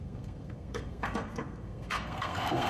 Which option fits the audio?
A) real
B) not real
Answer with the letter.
B